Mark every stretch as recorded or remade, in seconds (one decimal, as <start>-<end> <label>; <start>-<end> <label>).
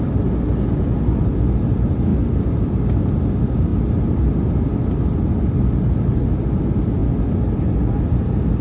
0.0-8.6 recorded